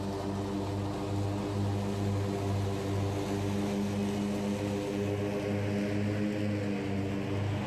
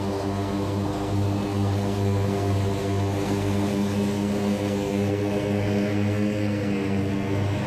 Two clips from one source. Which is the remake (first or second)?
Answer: second